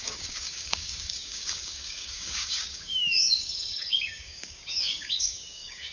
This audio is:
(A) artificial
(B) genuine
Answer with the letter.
A